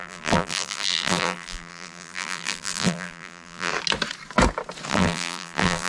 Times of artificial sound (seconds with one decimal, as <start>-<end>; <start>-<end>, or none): 0.0-3.7; 4.9-5.9